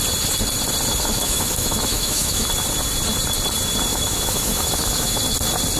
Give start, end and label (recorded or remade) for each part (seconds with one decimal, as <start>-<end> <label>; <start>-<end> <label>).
0.0-1.2 recorded; 1.2-2.5 remade; 2.5-3.9 recorded; 3.9-5.2 remade; 5.2-5.8 recorded